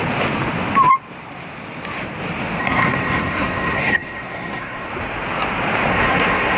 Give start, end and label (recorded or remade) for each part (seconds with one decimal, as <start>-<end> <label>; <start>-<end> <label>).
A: 0.0-2.6 recorded; 2.6-4.9 remade; 4.9-5.9 recorded; 5.9-6.6 remade